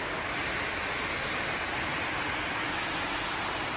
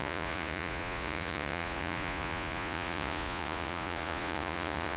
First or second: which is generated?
second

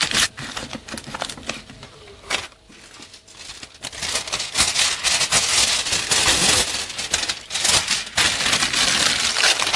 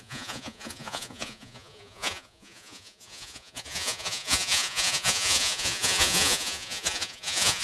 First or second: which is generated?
second